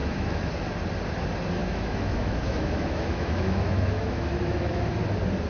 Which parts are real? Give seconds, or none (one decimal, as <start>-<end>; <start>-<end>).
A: 0.5-1.6; 4.9-5.5